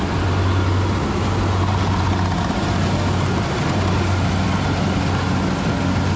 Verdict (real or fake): real